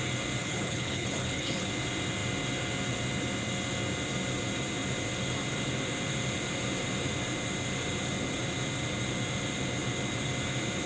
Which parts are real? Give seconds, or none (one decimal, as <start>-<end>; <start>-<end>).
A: 0.0-0.4; 1.7-10.9